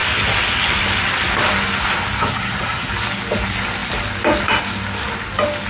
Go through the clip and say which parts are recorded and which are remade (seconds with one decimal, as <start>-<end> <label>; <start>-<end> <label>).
0.0-2.2 recorded; 2.2-2.9 remade; 2.9-5.7 recorded